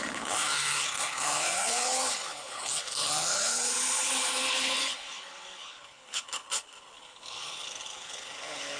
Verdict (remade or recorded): remade